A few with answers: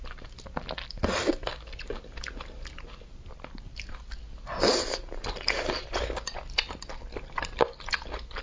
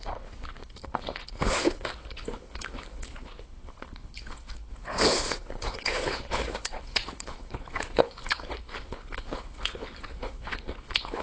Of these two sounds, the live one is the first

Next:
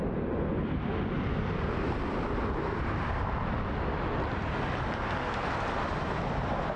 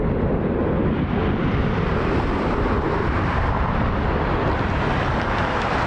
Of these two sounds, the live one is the first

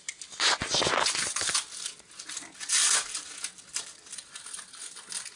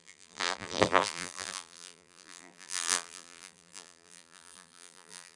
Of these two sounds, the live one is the first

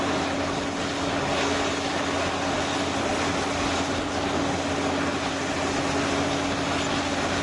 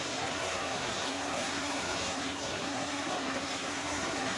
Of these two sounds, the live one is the first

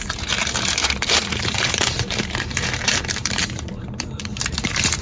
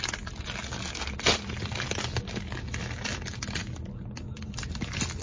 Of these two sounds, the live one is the second